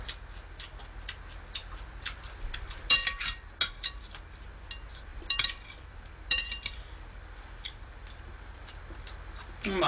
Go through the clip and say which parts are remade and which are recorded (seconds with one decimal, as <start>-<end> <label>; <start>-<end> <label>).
0.0-5.1 recorded; 5.1-8.7 remade; 8.7-9.9 recorded